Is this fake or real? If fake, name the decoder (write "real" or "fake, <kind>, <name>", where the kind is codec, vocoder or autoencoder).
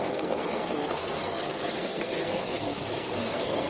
fake, codec, SNAC